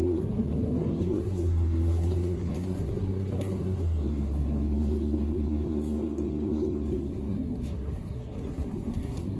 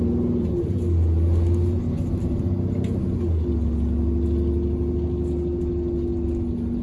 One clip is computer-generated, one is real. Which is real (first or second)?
second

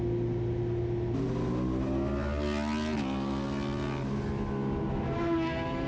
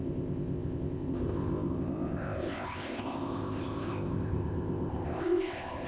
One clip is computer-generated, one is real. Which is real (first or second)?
first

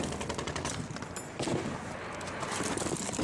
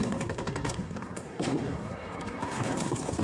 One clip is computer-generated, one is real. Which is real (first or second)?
first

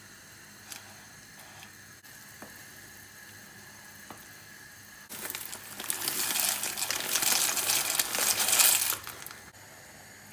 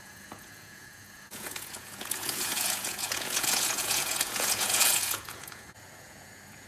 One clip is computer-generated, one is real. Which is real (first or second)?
first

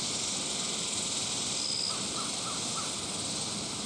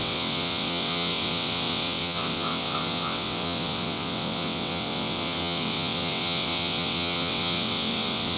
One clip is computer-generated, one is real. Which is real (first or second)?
first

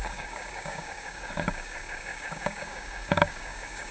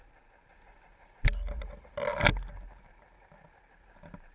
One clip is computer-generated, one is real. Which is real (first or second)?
second